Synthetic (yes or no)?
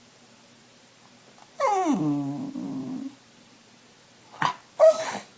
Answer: no